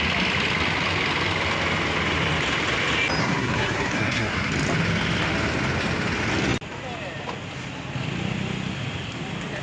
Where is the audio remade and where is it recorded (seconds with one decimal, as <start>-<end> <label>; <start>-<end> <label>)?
0.0-3.2 recorded; 3.2-4.5 remade; 4.5-9.6 recorded